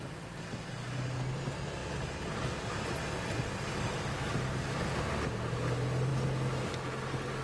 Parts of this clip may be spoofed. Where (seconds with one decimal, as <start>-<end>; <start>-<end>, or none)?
none